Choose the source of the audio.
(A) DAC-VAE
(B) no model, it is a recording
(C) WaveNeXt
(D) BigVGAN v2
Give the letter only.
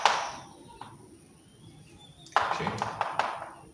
B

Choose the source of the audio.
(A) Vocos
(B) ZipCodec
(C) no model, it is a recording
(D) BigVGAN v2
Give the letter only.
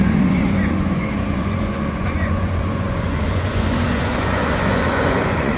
A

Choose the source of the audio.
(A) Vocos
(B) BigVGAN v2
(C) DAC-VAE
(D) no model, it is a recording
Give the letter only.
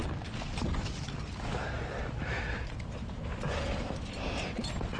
D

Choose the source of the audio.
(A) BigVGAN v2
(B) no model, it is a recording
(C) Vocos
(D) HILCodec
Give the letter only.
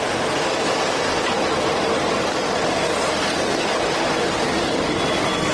B